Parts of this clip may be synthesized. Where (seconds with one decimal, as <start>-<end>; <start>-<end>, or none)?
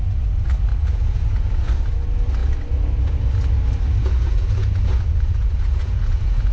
0.7-1.5; 4.0-6.5